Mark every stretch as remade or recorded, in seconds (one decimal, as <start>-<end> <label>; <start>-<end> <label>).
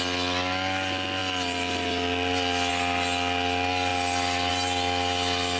0.0-5.6 recorded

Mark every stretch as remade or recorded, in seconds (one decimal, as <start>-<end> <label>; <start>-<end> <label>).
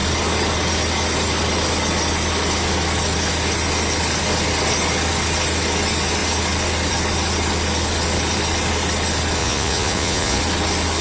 0.0-9.4 recorded; 9.4-10.4 remade; 10.4-11.0 recorded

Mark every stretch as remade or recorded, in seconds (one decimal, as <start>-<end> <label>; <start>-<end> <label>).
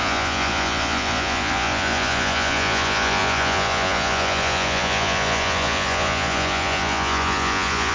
0.0-7.9 remade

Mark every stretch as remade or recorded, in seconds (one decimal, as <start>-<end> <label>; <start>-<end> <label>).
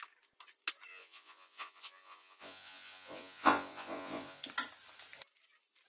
0.0-0.9 recorded; 0.9-4.4 remade; 4.4-5.9 recorded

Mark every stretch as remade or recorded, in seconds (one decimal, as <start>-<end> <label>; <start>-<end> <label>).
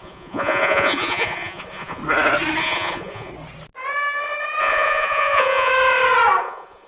0.0-2.0 remade; 2.0-2.6 recorded; 2.6-3.3 remade; 3.3-4.6 recorded; 4.6-5.7 remade; 5.7-6.4 recorded; 6.4-6.9 remade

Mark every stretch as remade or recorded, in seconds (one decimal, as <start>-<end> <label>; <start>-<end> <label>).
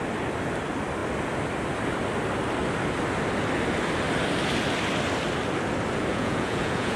0.0-6.1 recorded; 6.1-7.0 remade